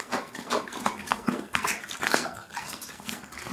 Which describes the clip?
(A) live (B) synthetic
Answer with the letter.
B